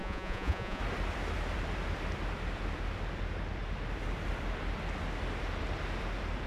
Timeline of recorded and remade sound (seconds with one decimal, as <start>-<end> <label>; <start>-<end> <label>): 0.0-0.8 remade; 0.8-6.5 recorded